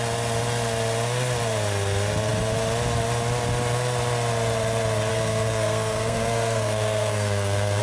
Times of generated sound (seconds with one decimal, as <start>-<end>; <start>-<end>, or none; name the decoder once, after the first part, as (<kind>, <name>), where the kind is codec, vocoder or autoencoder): 5.1-7.8 (codec, SNAC)